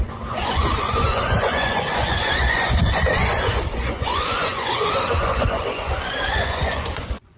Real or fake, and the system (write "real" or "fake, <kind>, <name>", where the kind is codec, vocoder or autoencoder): fake, vocoder, Vocos